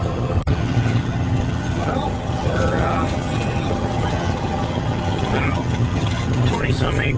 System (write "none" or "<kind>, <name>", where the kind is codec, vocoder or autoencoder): vocoder, HiFi-GAN